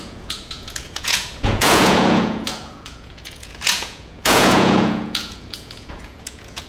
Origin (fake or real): fake